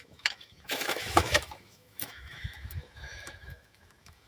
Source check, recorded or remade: remade